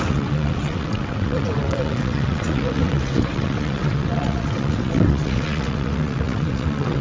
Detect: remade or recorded remade